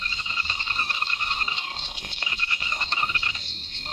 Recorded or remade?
remade